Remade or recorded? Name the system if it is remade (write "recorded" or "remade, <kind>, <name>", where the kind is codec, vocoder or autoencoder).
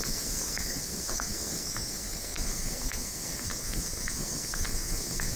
remade, codec, SNAC